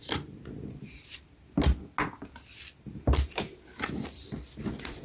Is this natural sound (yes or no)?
yes